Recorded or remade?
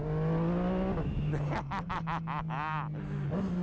recorded